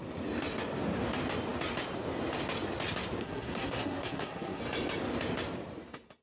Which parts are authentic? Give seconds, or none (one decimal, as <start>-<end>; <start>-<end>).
0.0-3.2; 4.6-6.2